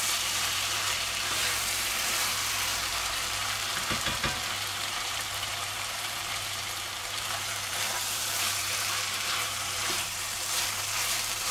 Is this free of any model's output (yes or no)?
no